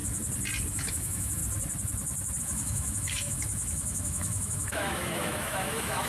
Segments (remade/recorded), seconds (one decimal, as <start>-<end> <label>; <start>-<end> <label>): 0.0-0.7 recorded; 0.7-1.4 remade; 1.4-2.4 recorded; 2.4-6.1 remade